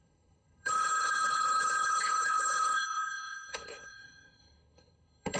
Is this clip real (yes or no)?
no